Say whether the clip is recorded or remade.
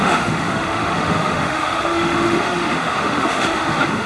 remade